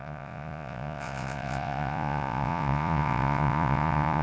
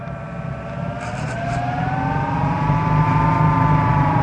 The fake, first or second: first